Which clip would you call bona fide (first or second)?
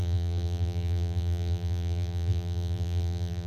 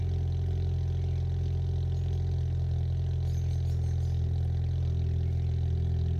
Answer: second